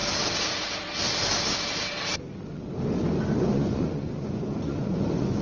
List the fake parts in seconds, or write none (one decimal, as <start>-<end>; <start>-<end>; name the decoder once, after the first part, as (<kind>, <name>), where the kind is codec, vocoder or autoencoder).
3.2-5.4 (vocoder, Vocos)